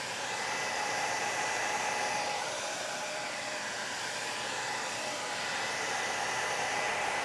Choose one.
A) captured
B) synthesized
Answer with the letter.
B